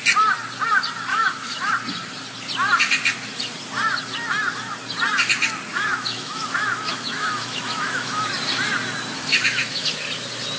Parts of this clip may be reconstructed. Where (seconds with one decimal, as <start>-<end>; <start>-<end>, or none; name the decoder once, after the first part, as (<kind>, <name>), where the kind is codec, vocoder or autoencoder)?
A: 1.1-1.7 (autoencoder, DAC-VAE); 5.7-8.3; 9.3-9.9